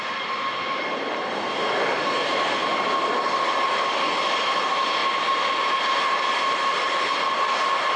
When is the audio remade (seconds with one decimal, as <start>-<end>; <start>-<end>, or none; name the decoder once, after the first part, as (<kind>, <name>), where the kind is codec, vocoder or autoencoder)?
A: 0.0-2.6 (vocoder, BigVGAN v2); 4.3-5.0; 5.5-8.0